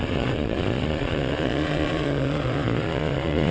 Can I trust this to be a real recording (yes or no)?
no